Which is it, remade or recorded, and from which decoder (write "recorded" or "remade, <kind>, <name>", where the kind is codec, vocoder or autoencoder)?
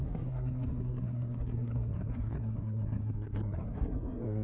remade, codec, SNAC